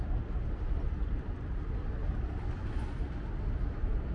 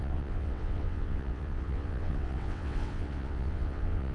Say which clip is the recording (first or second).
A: first